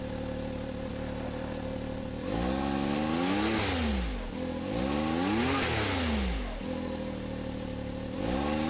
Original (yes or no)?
yes